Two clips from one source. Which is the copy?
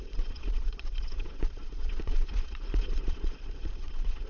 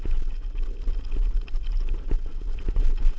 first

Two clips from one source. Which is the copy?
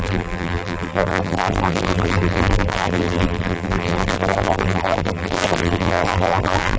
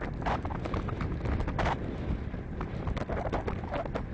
first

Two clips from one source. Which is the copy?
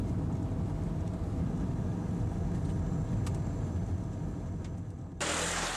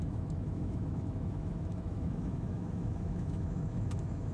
second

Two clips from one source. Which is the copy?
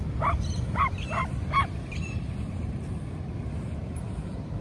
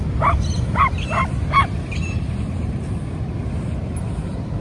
first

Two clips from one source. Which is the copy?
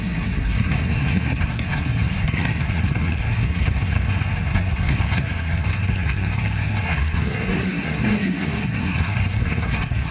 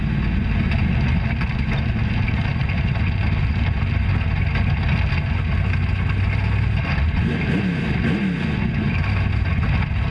first